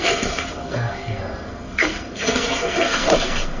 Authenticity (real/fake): fake